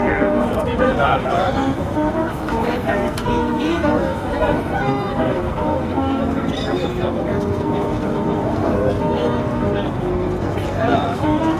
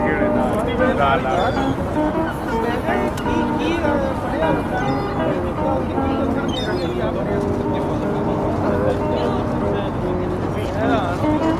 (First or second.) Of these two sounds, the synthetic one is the first